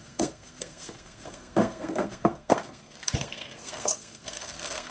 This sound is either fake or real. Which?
fake